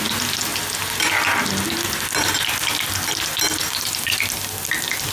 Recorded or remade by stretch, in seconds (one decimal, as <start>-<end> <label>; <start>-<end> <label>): 0.0-5.1 recorded